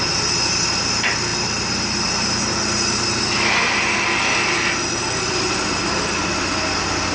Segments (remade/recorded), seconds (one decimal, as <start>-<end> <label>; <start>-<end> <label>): 0.0-7.1 recorded